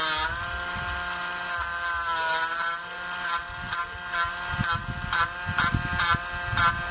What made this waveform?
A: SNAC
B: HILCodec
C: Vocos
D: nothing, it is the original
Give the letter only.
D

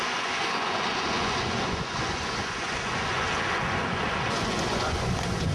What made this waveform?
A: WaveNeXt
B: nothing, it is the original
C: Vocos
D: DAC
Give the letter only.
C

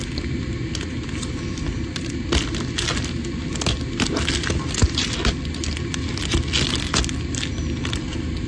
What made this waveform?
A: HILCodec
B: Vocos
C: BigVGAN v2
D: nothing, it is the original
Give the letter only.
D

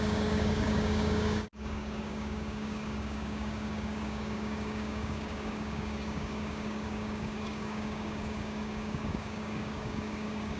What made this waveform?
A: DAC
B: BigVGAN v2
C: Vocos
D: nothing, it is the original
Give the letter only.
A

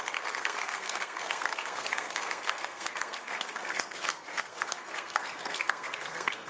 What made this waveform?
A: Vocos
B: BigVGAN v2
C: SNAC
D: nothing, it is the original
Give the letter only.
C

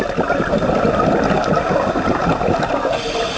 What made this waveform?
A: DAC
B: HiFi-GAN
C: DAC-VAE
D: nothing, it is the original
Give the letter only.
D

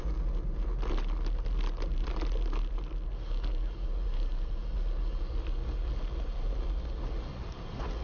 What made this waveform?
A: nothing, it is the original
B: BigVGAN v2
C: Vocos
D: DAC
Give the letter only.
A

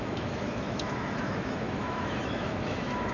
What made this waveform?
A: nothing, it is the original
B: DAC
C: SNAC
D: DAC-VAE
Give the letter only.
D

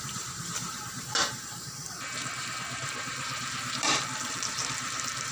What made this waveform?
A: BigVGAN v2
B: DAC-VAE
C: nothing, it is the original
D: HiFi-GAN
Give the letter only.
A